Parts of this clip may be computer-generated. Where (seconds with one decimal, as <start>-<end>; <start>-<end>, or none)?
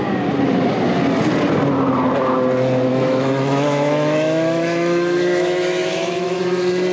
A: 2.9-6.4